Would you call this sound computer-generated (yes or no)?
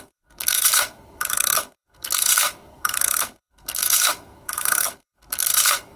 yes